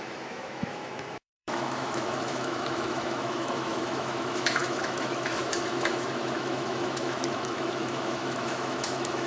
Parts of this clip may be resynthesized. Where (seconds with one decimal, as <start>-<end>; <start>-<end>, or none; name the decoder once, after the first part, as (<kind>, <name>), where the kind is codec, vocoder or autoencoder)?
0.0-9.3 (autoencoder, DAC-VAE)